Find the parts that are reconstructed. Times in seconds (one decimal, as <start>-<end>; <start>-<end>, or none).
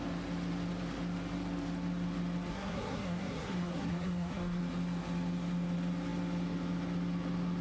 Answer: 2.5-4.6